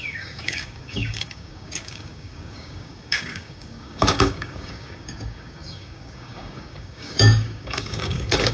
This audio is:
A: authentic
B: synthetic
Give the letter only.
B